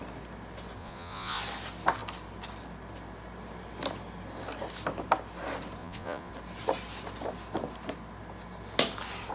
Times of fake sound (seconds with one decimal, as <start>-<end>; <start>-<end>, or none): 0.8-1.4; 5.8-6.3